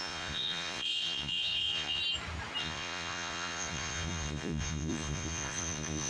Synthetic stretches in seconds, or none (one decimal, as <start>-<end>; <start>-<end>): 0.0-2.0; 2.6-6.1